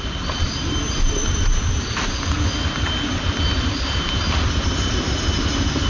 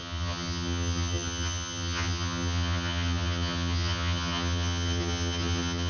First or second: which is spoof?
second